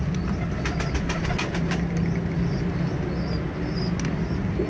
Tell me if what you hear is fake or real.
real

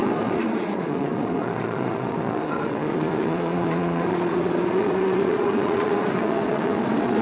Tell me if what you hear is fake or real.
fake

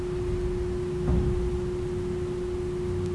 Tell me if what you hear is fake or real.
real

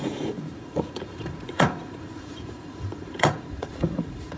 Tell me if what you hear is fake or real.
fake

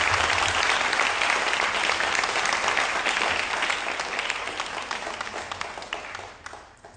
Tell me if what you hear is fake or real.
real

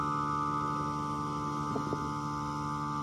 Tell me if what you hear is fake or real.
real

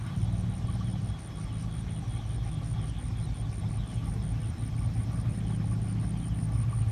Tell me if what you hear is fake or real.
real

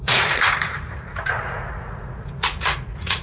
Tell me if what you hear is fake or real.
fake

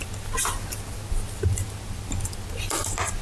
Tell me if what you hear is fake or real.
real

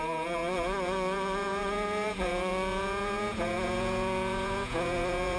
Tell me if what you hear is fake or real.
fake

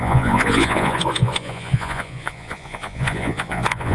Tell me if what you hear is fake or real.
fake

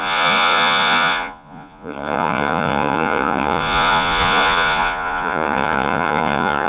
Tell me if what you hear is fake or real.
fake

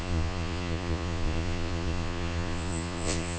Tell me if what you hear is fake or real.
fake